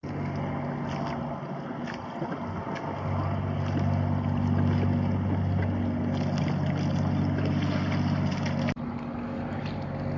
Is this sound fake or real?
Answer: real